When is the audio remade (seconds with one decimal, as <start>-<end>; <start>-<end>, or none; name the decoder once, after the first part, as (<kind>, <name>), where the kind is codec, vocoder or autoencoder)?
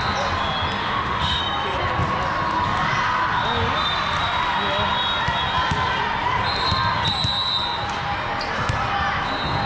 0.8-1.4 (autoencoder, DAC-VAE)